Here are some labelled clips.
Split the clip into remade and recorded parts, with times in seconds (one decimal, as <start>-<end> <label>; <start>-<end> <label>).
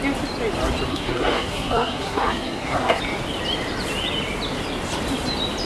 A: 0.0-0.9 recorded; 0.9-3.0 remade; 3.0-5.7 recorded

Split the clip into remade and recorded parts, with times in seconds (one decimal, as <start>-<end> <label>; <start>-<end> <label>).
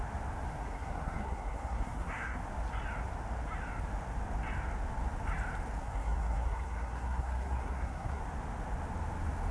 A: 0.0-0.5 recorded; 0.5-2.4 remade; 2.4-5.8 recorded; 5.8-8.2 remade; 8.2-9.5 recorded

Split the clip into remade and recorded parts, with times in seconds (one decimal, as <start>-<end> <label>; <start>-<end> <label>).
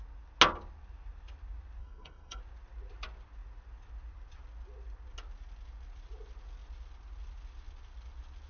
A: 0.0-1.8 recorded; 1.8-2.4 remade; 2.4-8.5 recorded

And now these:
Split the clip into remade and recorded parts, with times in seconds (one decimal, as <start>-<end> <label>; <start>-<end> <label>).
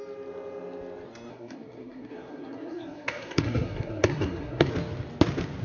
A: 0.0-1.3 recorded; 1.3-4.7 remade; 4.7-5.6 recorded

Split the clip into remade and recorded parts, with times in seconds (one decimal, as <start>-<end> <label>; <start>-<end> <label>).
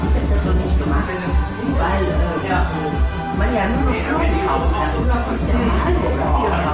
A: 0.0-6.7 recorded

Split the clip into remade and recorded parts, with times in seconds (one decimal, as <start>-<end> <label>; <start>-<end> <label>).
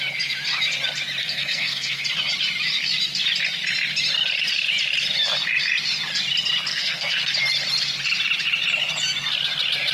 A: 0.0-1.2 recorded; 1.2-2.0 remade; 2.0-6.7 recorded; 6.7-7.3 remade; 7.3-9.9 recorded